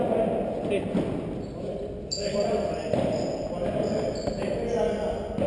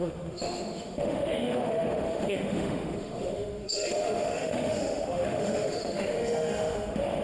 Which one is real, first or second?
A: first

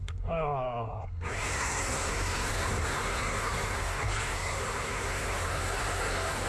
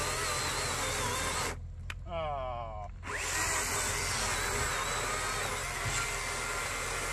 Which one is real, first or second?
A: second